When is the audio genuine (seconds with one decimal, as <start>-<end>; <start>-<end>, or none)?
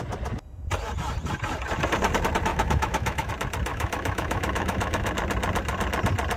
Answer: 0.0-2.5; 3.3-3.7; 5.1-6.4